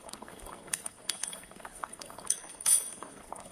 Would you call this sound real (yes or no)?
no